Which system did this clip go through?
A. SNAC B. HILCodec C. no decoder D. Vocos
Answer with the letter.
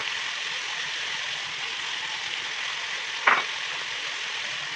C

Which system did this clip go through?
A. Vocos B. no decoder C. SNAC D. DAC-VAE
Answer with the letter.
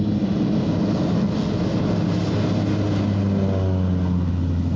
B